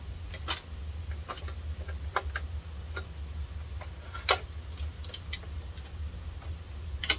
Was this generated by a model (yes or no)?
no